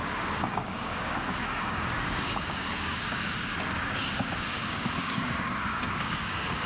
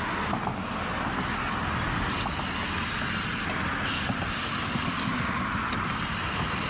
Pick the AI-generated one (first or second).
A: first